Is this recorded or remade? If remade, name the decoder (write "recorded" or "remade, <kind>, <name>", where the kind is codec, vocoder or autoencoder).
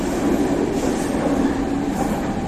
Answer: recorded